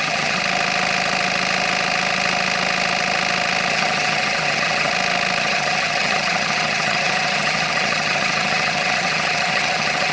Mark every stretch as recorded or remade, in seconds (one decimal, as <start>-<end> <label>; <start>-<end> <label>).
0.0-0.4 remade; 0.4-3.7 recorded; 3.7-4.9 remade; 4.9-5.4 recorded; 5.4-10.1 remade